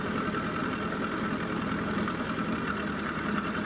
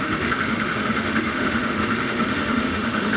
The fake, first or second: second